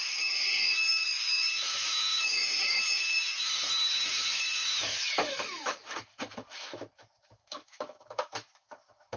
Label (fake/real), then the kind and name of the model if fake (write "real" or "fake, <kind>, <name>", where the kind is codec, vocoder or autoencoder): fake, autoencoder, DAC-VAE